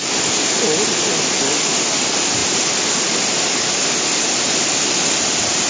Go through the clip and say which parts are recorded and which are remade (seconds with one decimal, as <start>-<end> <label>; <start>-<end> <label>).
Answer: 0.0-5.7 recorded